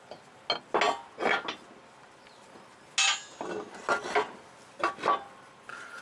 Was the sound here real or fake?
real